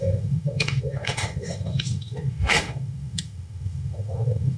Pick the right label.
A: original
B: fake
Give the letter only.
B